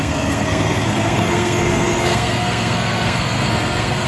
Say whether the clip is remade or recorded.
remade